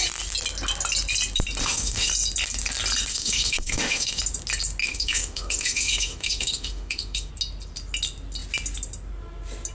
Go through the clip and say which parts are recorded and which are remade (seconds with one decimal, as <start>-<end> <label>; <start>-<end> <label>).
0.0-1.6 recorded; 1.6-2.1 remade; 2.1-3.1 recorded; 3.1-4.2 remade; 4.2-4.8 recorded; 4.8-7.3 remade; 7.3-9.7 recorded